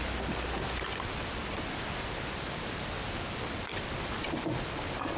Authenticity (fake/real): real